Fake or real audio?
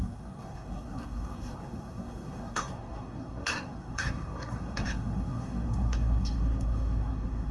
fake